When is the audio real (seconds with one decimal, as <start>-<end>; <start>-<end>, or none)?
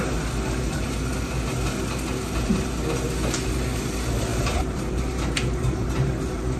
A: 0.0-4.3